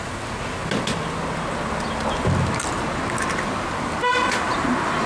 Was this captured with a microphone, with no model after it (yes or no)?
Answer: yes